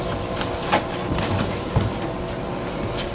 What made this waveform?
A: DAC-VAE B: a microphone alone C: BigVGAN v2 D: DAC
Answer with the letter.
B